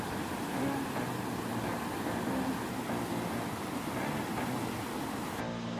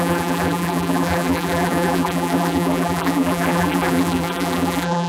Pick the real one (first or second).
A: first